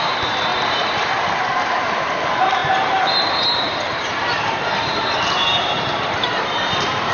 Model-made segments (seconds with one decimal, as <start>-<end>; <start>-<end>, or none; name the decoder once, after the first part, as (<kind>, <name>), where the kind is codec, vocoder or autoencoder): 0.0-7.1 (vocoder, BigVGAN v2)